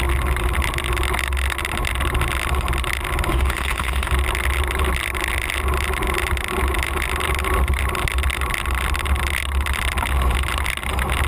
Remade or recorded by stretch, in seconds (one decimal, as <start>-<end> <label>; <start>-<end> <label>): 0.0-3.3 recorded; 3.3-4.1 remade; 4.1-11.3 recorded